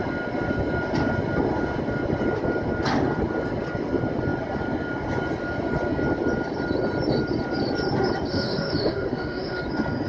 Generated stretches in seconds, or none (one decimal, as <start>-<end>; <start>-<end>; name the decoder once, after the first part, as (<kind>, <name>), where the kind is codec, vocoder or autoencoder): 8.3-9.6 (autoencoder, DAC-VAE)